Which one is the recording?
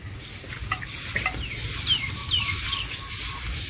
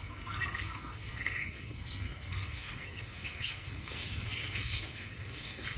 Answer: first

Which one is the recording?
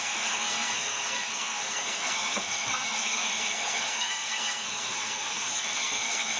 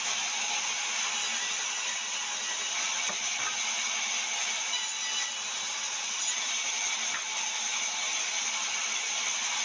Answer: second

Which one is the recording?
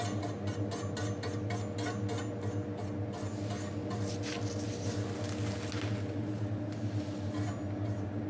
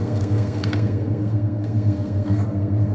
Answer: first